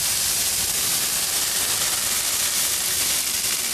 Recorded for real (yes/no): yes